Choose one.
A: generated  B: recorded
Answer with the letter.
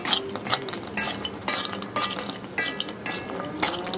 B